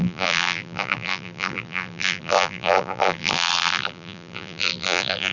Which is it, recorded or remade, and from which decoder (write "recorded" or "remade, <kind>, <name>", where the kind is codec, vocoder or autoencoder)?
remade, vocoder, BigVGAN v2